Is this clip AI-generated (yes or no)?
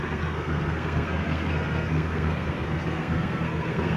yes